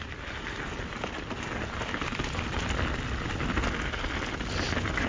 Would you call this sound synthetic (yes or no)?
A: no